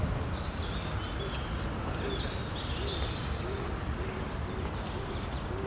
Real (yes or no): yes